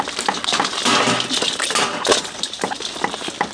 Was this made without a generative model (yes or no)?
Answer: yes